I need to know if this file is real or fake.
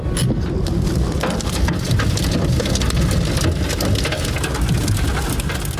real